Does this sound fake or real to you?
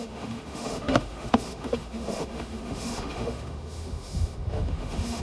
fake